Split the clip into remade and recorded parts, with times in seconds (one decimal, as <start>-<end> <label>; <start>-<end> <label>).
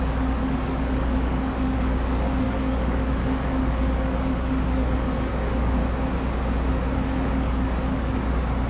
0.0-5.8 remade; 5.8-6.7 recorded; 6.7-8.7 remade